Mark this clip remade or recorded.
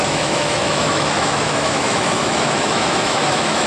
remade